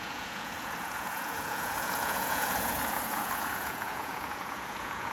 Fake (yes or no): yes